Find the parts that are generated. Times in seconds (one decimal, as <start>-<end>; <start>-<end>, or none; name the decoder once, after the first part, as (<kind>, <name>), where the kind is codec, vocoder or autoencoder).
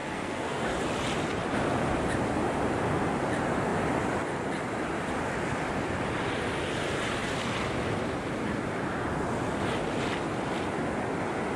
0.0-0.7 (codec, SNAC)